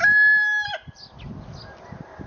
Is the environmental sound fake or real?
real